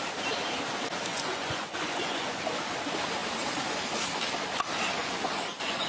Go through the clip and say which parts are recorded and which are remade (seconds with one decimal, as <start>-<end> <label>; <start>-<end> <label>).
0.0-1.1 recorded; 1.1-2.4 remade; 2.4-5.0 recorded; 5.0-5.9 remade